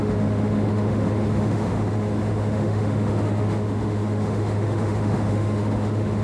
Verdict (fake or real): fake